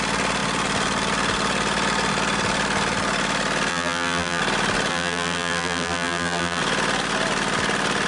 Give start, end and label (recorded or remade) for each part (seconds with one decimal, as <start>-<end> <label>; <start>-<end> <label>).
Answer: 0.0-3.7 recorded; 3.7-4.4 remade; 4.4-4.9 recorded; 4.9-6.6 remade; 6.6-8.1 recorded